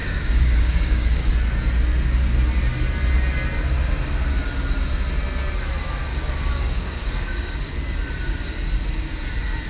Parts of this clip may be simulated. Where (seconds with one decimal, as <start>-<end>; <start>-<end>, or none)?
0.0-1.3; 6.1-7.7